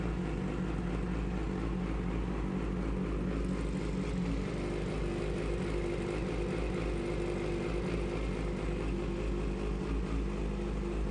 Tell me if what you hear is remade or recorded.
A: recorded